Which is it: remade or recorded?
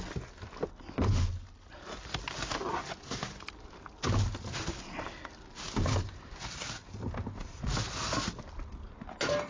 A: recorded